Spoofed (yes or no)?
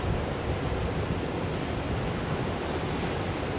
no